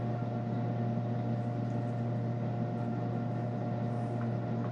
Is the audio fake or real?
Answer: real